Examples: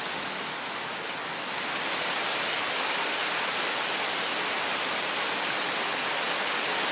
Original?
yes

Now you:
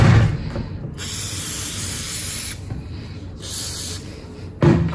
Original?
no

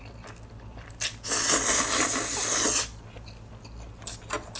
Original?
yes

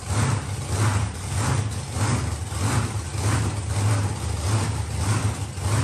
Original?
yes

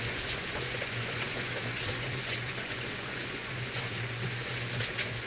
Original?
no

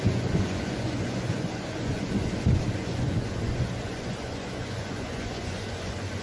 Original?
no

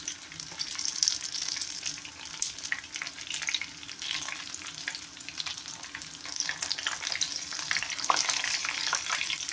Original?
yes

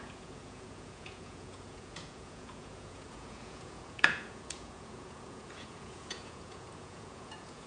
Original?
no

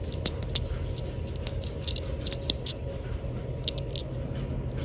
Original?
yes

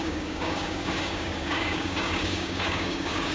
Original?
no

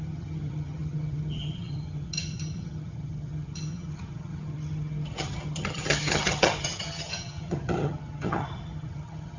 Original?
no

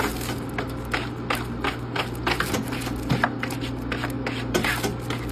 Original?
yes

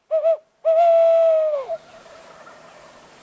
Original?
no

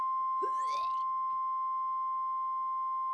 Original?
yes